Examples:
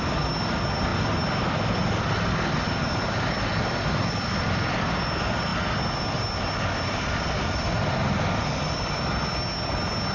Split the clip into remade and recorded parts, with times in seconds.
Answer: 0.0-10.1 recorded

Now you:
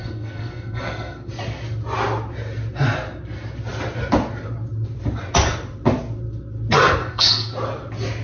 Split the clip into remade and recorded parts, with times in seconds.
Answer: 0.0-1.3 remade; 1.3-7.0 recorded; 7.0-7.5 remade; 7.5-8.2 recorded

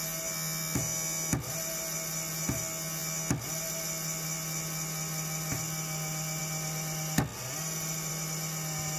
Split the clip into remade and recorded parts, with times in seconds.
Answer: 0.0-9.0 recorded

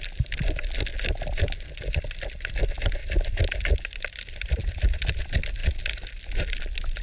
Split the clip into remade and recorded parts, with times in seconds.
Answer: 0.0-7.0 recorded

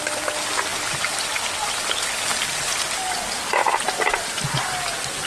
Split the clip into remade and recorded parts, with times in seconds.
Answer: 0.0-5.3 recorded

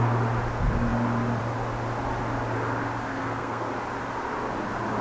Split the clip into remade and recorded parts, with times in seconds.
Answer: 0.0-3.1 recorded; 3.1-3.7 remade; 3.7-5.0 recorded

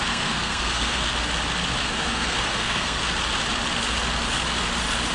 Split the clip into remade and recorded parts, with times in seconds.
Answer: 0.0-1.1 remade; 1.1-1.8 recorded; 1.8-3.0 remade; 3.0-5.1 recorded

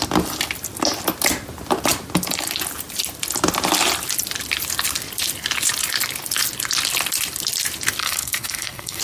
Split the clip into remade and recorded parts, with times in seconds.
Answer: 0.0-8.0 recorded; 8.0-9.0 remade